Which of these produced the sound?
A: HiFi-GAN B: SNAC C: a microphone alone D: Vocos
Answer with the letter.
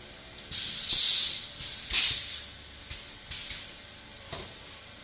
C